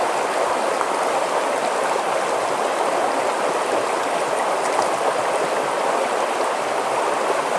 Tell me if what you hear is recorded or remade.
recorded